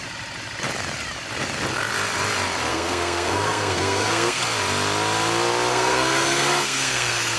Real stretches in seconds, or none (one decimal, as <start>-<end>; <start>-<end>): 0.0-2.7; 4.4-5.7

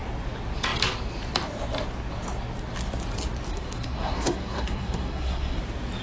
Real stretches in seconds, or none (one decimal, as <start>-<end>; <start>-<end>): 0.0-3.5; 5.6-6.0

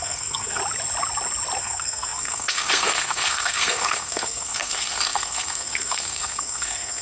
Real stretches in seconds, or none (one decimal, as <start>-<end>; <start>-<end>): 0.6-1.6

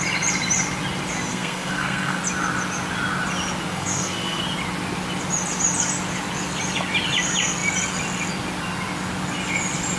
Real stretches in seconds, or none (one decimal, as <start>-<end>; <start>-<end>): 0.0-1.3; 2.2-3.7; 4.4-10.0